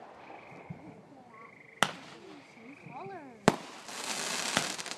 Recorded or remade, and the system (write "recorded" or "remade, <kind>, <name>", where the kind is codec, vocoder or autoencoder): recorded